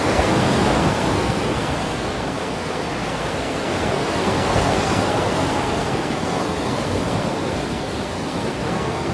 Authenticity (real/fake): fake